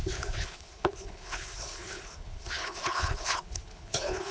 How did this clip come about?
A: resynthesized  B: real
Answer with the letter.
A